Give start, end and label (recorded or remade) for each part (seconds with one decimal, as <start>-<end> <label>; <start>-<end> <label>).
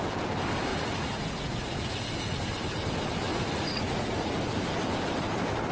0.0-0.7 recorded; 0.7-2.1 remade; 2.1-3.3 recorded; 3.3-4.3 remade; 4.3-5.7 recorded